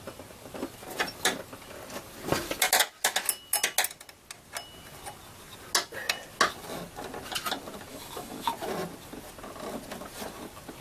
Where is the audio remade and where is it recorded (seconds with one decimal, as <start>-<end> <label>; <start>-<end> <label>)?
0.0-7.9 recorded; 7.9-8.5 remade; 8.5-10.8 recorded